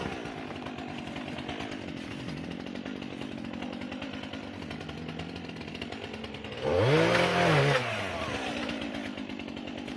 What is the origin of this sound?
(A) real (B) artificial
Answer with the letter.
A